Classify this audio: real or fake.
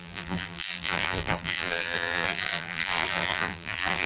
fake